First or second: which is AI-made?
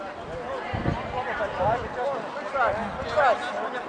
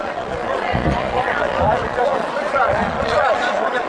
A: second